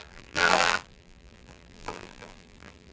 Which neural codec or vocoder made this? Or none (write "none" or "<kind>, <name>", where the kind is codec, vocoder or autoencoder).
vocoder, BigVGAN v2